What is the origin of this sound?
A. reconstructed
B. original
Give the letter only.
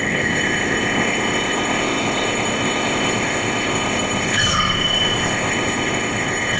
A